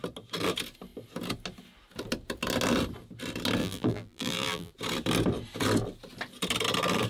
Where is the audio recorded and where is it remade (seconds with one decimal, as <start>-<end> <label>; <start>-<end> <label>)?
0.0-3.6 recorded; 3.6-4.7 remade; 4.7-7.1 recorded